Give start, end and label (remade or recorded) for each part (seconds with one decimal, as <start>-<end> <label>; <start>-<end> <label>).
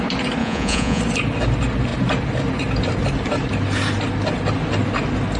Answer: 0.0-0.4 recorded; 0.4-1.0 remade; 1.0-5.4 recorded